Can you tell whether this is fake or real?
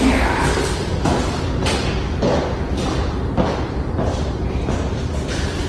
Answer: real